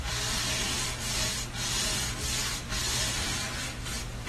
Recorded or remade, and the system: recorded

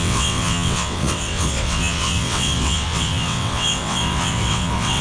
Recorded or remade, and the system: remade, vocoder, WaveNeXt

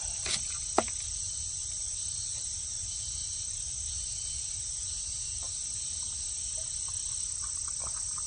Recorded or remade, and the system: recorded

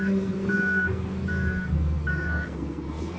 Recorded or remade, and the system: remade, codec, SNAC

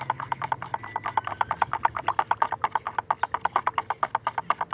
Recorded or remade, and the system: recorded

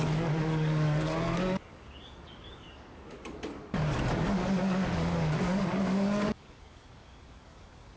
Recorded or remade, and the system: remade, codec, DAC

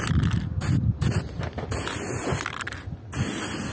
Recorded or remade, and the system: recorded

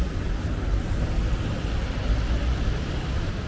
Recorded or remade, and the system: recorded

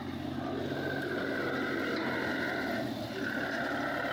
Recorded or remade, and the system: recorded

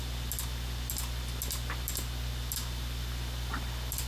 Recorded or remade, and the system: recorded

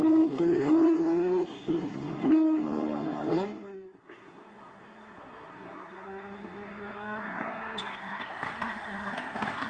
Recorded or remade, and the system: remade, codec, SNAC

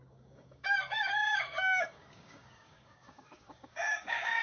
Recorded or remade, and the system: remade, codec, DAC